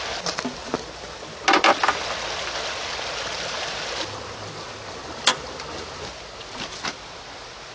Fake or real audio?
real